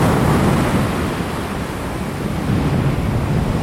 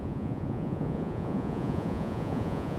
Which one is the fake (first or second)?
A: second